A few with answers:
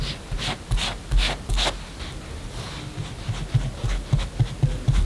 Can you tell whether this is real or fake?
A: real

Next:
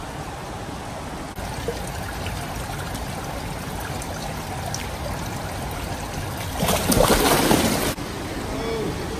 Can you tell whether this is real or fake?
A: real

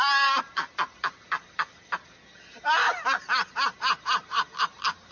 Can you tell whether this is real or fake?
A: fake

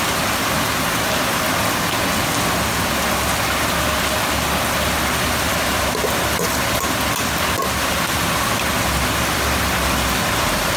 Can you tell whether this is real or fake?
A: real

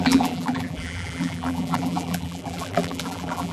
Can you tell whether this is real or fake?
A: fake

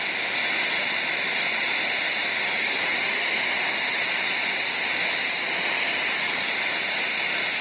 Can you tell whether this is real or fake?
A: real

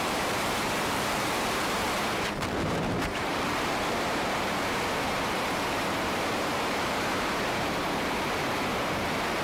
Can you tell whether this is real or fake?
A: fake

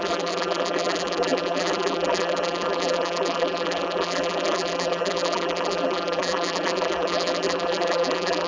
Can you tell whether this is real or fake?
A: fake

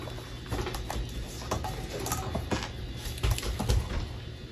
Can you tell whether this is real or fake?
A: real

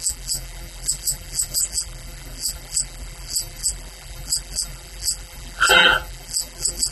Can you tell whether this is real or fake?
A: fake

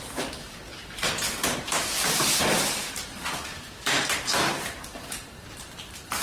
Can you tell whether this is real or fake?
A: fake